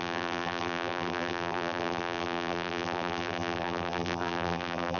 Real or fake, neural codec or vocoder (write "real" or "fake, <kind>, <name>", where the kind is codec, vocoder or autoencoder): fake, vocoder, BigVGAN v2